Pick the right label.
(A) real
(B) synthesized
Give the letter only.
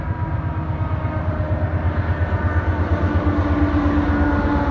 A